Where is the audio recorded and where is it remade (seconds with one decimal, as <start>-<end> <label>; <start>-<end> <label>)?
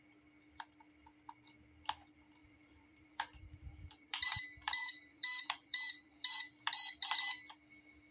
0.0-2.4 recorded; 2.4-6.5 remade; 6.5-8.1 recorded